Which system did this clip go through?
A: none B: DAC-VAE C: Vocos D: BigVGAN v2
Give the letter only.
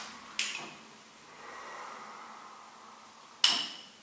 A